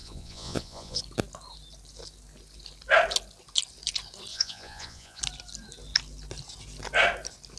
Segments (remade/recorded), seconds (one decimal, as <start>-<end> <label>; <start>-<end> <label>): 0.0-1.0 remade; 1.0-4.3 recorded; 4.3-5.2 remade; 5.2-7.6 recorded